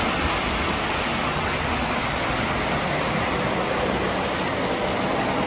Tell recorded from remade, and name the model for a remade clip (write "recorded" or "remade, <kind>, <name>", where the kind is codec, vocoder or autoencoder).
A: recorded